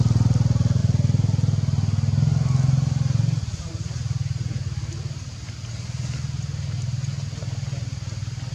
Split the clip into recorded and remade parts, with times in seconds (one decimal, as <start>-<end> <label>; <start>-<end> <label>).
0.0-8.5 recorded